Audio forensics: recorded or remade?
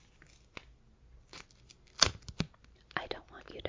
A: recorded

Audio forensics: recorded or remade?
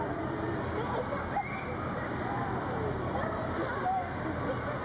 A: recorded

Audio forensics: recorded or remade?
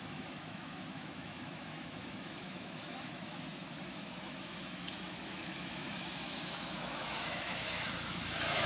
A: remade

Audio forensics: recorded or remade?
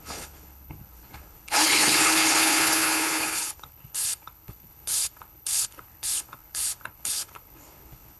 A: remade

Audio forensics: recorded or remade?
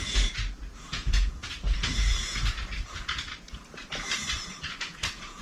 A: remade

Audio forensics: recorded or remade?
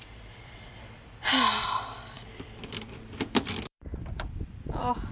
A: remade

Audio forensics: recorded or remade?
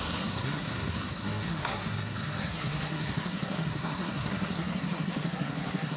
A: remade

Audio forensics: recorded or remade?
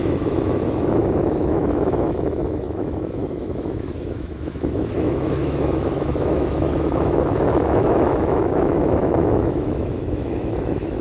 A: remade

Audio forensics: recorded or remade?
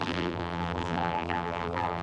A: remade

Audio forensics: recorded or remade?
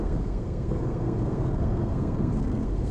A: remade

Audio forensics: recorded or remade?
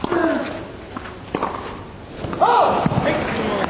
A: recorded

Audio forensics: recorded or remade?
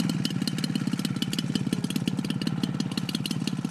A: recorded